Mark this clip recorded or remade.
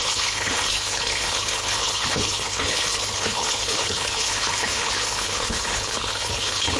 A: remade